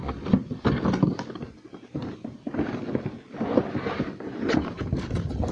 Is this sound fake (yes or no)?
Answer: no